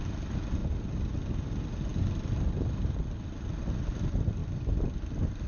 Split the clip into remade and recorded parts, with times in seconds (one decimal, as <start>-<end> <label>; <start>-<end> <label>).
0.0-5.5 recorded